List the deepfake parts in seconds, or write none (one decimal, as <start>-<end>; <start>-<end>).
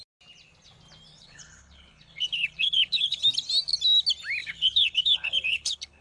1.1-3.2; 4.4-6.0